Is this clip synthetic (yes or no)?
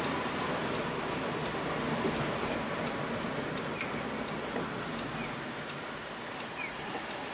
no